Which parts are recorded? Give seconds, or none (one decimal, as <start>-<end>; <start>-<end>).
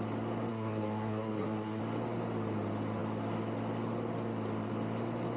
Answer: 0.0-0.5; 1.8-5.4